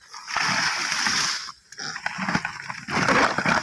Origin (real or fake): real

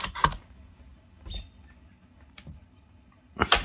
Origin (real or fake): real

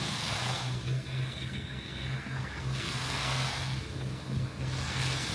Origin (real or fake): fake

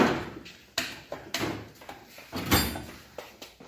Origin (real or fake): real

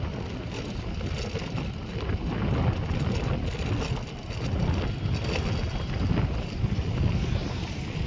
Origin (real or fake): real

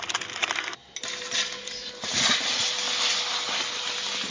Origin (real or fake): real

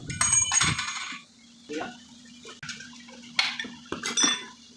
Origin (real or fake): real